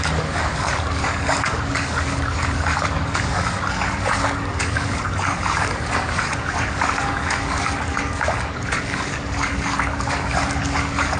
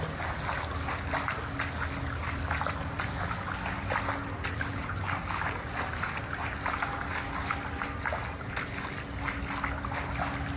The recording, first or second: second